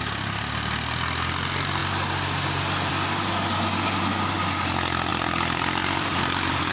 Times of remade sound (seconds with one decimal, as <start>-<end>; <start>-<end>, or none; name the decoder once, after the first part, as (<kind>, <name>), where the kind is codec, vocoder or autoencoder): 5.1-6.7 (vocoder, BigVGAN v2)